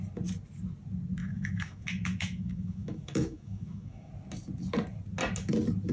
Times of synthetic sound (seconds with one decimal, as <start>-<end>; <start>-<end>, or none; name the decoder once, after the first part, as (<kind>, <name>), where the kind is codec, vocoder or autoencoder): 1.2-4.1 (autoencoder, DAC-VAE)